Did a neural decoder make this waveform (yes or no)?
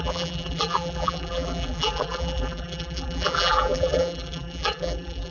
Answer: yes